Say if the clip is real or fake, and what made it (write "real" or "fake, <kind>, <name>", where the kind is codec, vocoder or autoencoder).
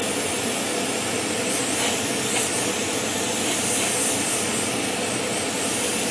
real